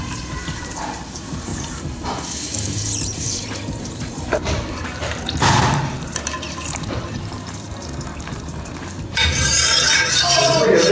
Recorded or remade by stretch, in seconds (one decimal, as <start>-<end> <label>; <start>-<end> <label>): 0.0-10.9 remade